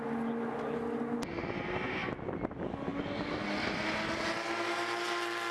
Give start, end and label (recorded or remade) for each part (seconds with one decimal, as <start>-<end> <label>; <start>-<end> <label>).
0.0-5.5 recorded